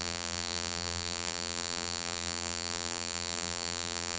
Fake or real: fake